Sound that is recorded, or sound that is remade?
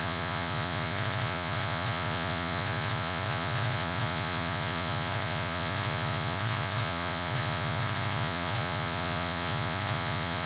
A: remade